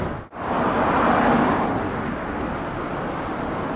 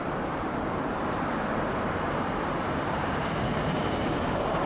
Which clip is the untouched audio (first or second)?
first